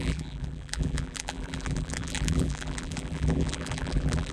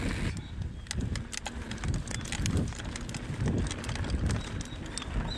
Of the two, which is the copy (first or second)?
first